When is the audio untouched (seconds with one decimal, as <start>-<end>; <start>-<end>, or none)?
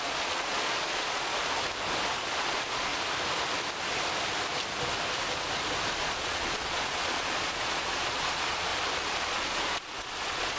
1.3-2.4; 2.9-6.0; 8.7-9.3